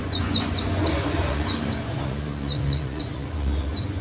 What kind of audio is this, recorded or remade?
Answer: remade